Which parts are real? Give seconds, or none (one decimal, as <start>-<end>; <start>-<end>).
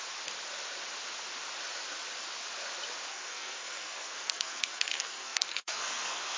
0.0-3.1